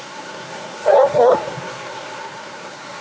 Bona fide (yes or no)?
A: no